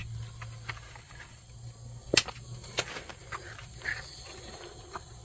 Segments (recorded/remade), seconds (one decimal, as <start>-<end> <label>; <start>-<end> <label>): 0.0-5.2 recorded